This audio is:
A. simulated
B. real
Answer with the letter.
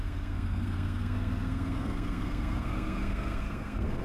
A